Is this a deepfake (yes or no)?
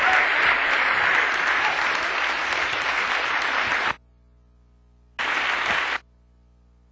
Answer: no